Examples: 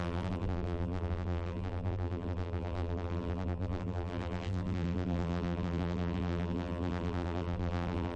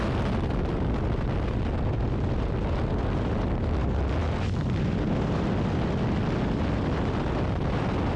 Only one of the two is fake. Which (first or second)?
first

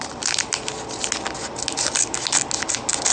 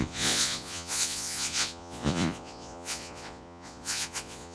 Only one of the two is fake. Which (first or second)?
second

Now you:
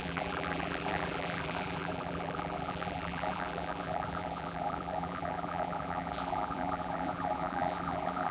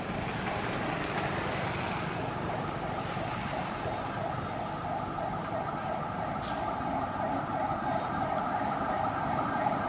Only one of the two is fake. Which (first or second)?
first